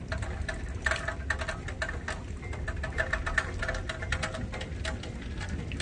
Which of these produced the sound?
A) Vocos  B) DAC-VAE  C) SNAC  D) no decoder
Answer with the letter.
D